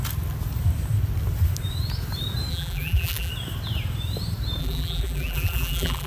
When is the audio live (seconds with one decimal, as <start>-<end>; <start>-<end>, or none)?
0.0-2.5; 3.3-4.6